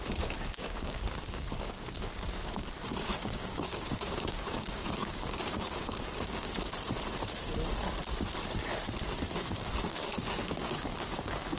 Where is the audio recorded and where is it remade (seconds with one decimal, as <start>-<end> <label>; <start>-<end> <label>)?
0.0-6.5 remade; 6.5-9.4 recorded; 9.4-11.6 remade